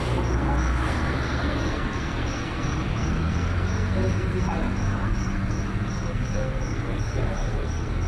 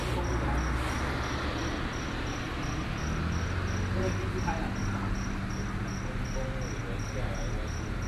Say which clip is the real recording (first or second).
second